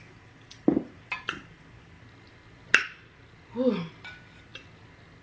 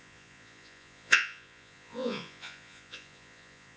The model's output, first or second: second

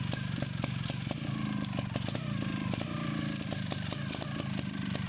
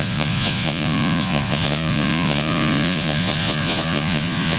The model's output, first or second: second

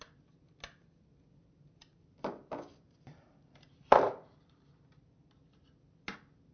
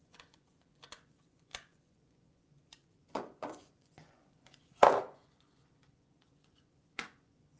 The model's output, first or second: second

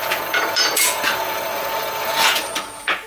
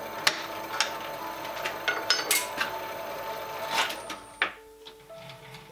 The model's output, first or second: first